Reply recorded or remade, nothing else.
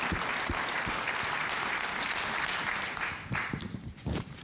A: recorded